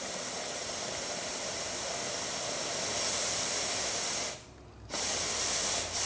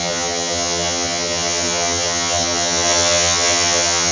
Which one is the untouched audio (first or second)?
first